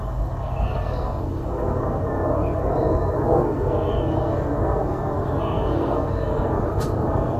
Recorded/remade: remade